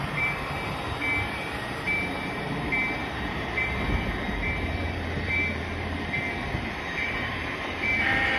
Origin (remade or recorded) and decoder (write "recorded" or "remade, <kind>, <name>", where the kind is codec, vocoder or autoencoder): remade, vocoder, BigVGAN v2